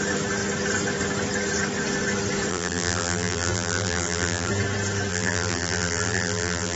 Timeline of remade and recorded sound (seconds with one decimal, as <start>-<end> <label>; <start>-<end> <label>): 0.0-2.5 recorded; 2.5-4.5 remade; 4.5-5.1 recorded; 5.1-6.8 remade

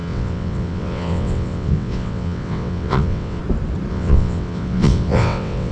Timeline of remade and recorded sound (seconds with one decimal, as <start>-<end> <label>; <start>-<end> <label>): 0.0-3.4 remade; 3.4-3.9 recorded; 3.9-5.7 remade

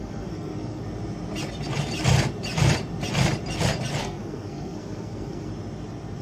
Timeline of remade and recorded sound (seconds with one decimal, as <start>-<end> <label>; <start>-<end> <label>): 0.0-0.8 remade; 0.8-4.0 recorded; 4.0-5.5 remade; 5.5-6.2 recorded